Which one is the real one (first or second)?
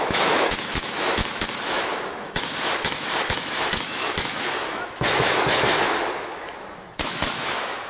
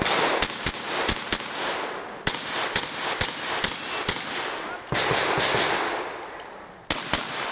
second